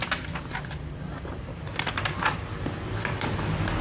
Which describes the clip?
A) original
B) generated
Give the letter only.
A